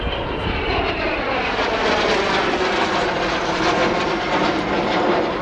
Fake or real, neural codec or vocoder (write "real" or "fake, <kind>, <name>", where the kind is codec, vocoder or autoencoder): real